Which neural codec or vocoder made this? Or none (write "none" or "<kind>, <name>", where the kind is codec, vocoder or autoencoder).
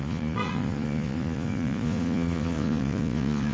vocoder, Vocos